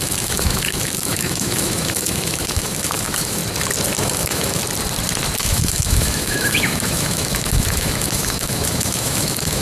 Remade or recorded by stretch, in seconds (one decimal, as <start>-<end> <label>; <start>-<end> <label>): 0.0-3.4 remade; 3.4-4.0 recorded; 4.0-4.6 remade; 4.6-5.4 recorded; 5.4-9.6 remade